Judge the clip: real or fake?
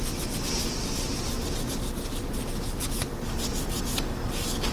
real